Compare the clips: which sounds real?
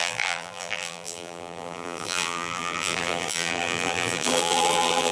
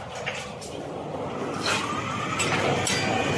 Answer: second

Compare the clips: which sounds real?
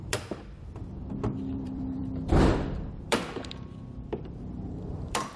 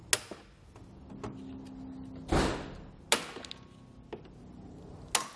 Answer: second